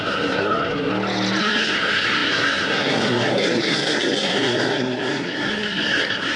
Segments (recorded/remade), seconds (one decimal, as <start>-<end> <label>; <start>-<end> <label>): 0.0-0.9 remade; 0.9-1.4 recorded; 1.4-6.4 remade